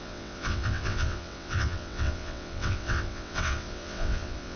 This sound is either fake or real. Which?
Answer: fake